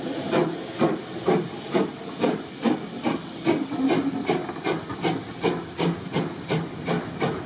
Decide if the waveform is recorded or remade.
recorded